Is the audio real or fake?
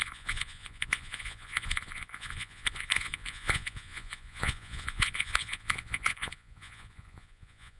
fake